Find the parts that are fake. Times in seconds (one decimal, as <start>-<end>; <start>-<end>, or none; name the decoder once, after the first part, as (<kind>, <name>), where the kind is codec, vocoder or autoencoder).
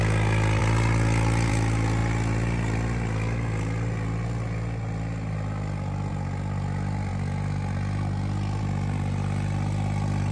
none